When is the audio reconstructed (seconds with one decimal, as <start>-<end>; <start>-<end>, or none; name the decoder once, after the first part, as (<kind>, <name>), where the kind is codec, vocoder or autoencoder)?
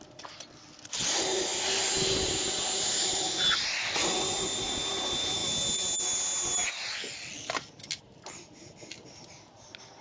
none